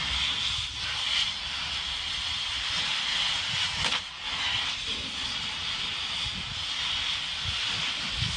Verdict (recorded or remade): recorded